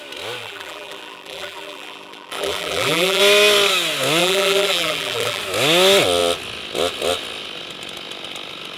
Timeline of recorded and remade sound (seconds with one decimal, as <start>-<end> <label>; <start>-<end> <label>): 0.0-0.4 recorded; 0.4-3.2 remade; 3.2-4.2 recorded; 4.2-5.4 remade; 5.4-8.8 recorded